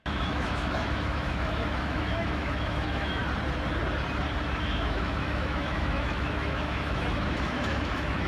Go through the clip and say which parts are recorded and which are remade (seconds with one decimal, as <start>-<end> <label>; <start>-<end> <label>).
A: 0.0-3.2 remade; 3.2-4.6 recorded; 4.6-8.3 remade